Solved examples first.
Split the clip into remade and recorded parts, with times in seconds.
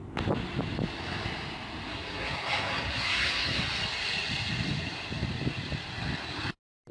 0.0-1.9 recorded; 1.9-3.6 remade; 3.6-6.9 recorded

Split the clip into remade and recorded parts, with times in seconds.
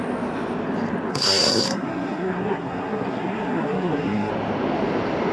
0.0-1.1 recorded; 1.1-4.3 remade; 4.3-5.3 recorded